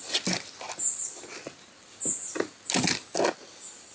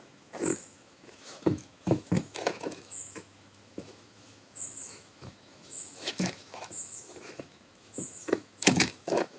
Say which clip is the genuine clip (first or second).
first